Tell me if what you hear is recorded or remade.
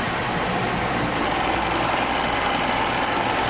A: remade